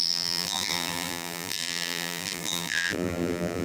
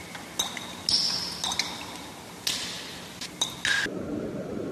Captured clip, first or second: second